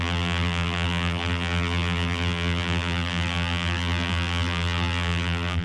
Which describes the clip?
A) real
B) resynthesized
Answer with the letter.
B